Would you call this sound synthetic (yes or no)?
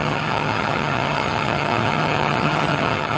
yes